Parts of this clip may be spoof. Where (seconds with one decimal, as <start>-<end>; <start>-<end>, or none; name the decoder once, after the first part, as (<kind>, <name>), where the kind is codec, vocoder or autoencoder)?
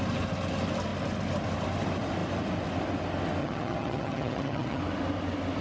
3.4-4.8 (vocoder, HiFi-GAN)